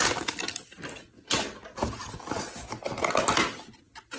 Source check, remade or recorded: recorded